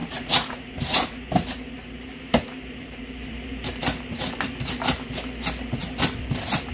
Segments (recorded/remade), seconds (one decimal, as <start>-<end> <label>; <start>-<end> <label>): 0.0-4.0 remade; 4.0-6.7 recorded